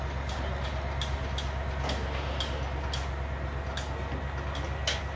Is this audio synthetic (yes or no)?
no